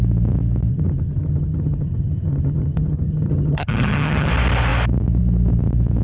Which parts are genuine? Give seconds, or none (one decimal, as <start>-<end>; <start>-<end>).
0.0-0.7; 4.3-6.0